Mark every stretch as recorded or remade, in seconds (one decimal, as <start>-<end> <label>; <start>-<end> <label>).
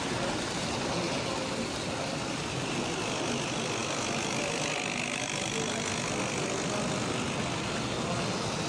0.0-8.7 recorded